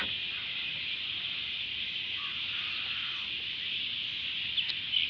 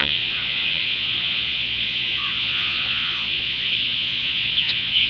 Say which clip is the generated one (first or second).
second